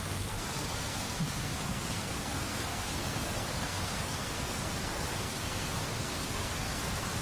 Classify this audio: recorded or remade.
remade